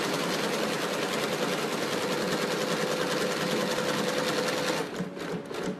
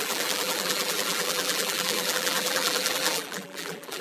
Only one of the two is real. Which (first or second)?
first